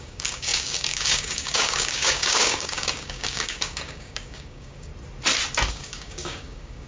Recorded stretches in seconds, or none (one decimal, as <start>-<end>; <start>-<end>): 4.9-5.7